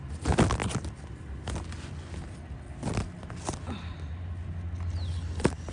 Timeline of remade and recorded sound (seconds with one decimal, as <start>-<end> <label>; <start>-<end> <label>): 0.0-5.7 recorded